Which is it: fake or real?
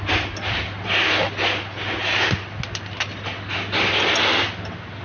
real